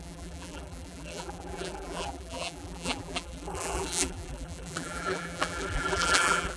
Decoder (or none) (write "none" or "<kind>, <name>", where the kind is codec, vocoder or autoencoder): vocoder, BigVGAN v2